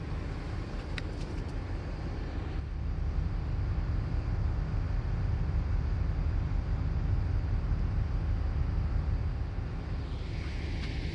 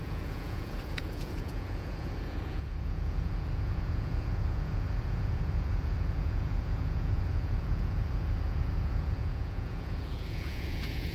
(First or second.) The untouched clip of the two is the first